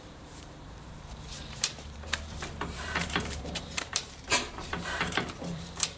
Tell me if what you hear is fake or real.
fake